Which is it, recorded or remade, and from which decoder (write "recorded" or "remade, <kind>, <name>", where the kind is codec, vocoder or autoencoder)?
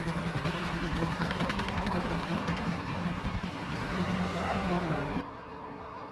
remade, codec, SNAC